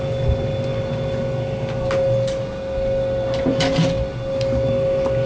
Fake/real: real